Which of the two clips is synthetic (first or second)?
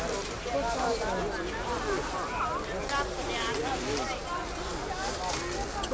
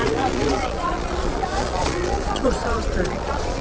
second